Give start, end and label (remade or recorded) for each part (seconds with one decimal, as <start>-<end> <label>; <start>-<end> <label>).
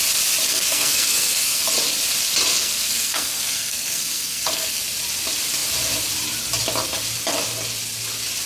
0.0-0.5 recorded; 0.5-1.7 remade; 1.7-2.5 recorded; 2.5-4.8 remade; 4.8-8.5 recorded